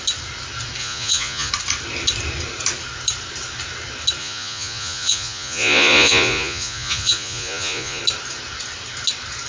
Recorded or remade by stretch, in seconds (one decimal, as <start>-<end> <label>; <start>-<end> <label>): 0.0-0.8 recorded; 0.8-1.5 remade; 1.5-4.2 recorded; 4.2-8.0 remade; 8.0-9.5 recorded